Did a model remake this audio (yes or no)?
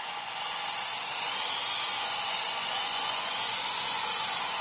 yes